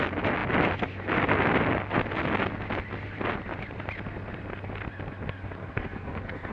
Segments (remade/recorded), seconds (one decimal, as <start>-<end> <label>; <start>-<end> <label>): 0.0-5.6 recorded; 5.6-6.5 remade